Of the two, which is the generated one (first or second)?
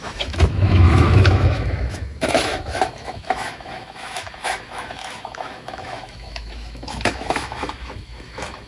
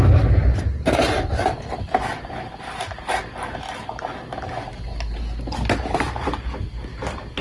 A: first